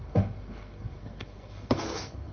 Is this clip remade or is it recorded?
remade